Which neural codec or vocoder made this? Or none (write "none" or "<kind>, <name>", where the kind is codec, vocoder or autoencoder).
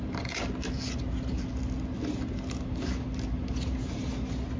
none